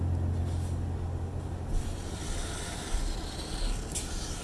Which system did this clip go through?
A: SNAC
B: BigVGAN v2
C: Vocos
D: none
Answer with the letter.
D